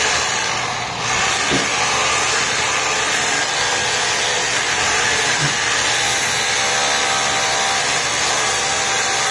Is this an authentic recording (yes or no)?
yes